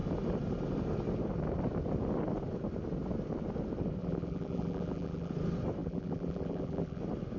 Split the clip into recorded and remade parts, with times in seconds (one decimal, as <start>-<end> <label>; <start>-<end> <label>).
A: 0.0-4.0 recorded; 4.0-5.3 remade; 5.3-5.8 recorded; 5.8-7.0 remade; 7.0-7.4 recorded